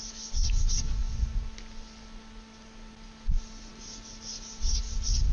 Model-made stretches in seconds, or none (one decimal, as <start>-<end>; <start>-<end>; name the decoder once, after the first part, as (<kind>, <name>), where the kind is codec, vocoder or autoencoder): none